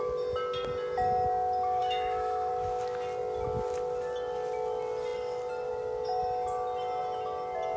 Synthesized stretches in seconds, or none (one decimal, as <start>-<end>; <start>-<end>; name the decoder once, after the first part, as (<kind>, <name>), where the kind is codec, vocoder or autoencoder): 1.8-2.5 (autoencoder, DAC-VAE)